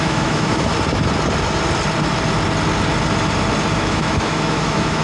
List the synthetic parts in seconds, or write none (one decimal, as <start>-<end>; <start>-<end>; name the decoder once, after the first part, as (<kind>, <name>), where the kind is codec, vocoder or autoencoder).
0.0-0.7 (autoencoder, DAC-VAE); 3.7-5.0